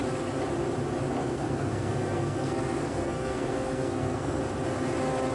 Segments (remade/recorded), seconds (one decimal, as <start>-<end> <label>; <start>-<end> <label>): 0.0-1.2 recorded; 1.2-4.4 remade; 4.4-5.3 recorded